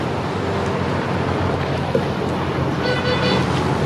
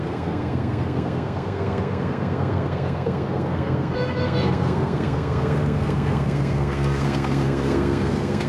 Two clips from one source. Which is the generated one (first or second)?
second